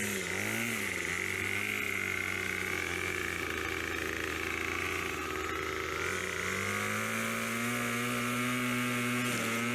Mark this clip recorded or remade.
recorded